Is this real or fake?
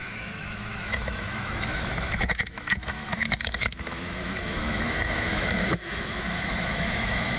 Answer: fake